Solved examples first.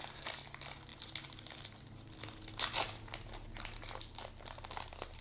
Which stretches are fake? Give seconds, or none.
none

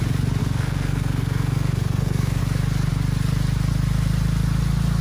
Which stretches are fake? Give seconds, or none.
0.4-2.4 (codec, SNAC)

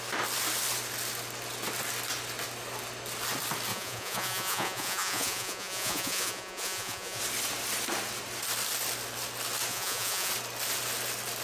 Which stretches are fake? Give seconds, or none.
3.7-7.2 (vocoder, Vocos); 9.7-10.3

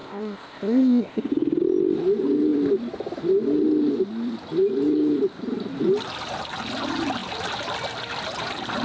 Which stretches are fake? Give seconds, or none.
0.0-1.3 (codec, ZipCodec)

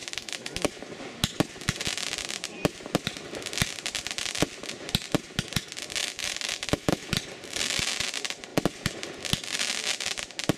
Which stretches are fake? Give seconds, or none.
0.0-0.7 (autoencoder, DAC-VAE); 6.0-7.1

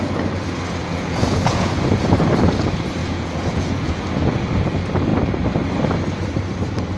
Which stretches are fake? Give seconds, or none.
0.8-1.7 (vocoder, Vocos); 3.0-4.0

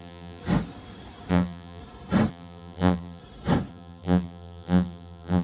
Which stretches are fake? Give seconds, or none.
0.0-0.4 (vocoder, BigVGAN v2); 1.3-1.8; 2.3-3.2; 3.7-5.4

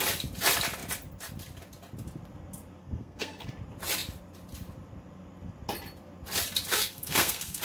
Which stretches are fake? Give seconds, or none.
2.8-3.5 (codec, SNAC); 6.7-7.6